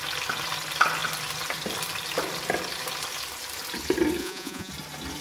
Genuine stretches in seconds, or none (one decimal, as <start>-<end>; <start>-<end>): 0.0-4.2; 4.7-5.2